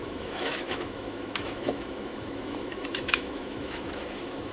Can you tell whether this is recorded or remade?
remade